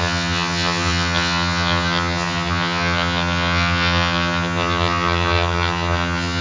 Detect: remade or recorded remade